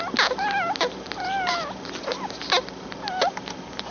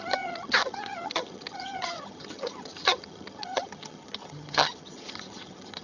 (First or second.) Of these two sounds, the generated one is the second